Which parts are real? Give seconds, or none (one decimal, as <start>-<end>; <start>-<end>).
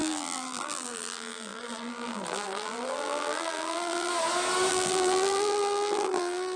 4.1-4.7